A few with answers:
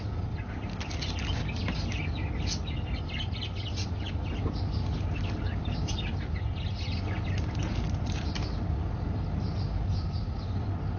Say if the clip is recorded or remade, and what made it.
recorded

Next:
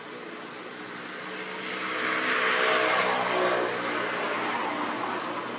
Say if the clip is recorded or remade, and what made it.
recorded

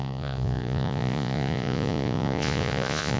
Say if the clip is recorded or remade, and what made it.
remade, vocoder, Vocos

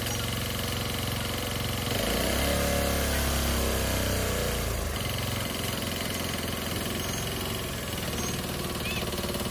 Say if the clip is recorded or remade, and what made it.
recorded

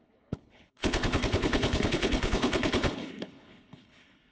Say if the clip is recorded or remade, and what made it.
remade, codec, HILCodec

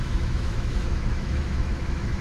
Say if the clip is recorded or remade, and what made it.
remade, autoencoder, DAC-VAE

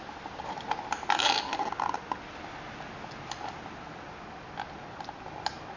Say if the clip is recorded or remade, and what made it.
recorded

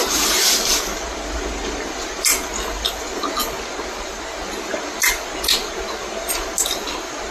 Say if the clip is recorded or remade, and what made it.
recorded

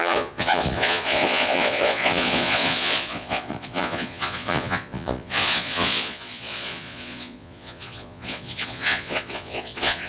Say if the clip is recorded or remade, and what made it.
remade, vocoder, Vocos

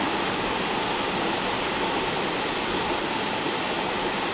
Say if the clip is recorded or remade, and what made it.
recorded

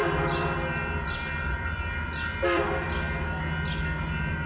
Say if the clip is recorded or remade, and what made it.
remade, vocoder, BigVGAN v2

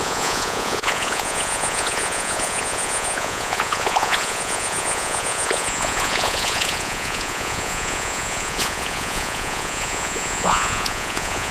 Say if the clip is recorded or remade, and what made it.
remade, vocoder, Vocos